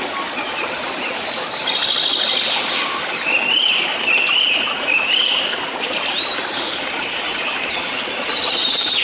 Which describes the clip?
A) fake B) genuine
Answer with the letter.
B